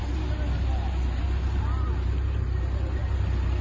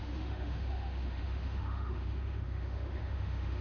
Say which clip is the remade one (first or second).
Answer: second